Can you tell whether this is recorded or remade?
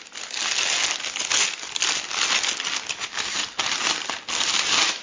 recorded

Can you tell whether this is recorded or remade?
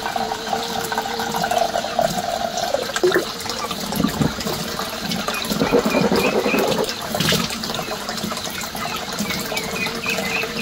recorded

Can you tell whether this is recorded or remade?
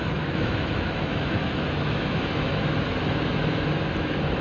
remade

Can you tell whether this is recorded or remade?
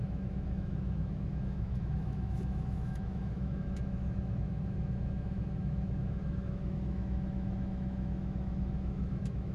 remade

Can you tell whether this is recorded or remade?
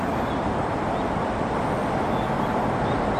recorded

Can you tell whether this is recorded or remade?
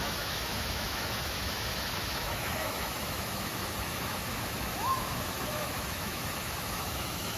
remade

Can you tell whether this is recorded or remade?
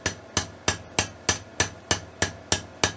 recorded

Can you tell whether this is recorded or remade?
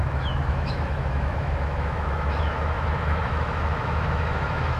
remade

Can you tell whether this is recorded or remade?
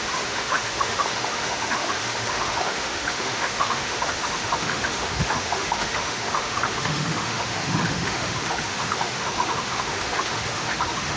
remade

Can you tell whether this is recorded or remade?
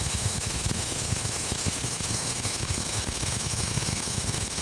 remade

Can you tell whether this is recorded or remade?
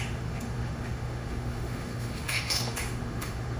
remade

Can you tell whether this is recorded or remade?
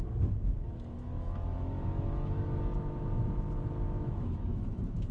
remade